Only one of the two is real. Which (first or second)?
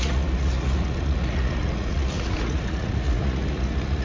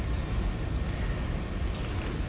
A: second